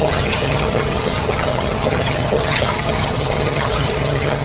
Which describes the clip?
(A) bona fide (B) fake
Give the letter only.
B